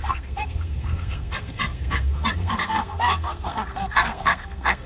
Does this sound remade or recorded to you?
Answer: remade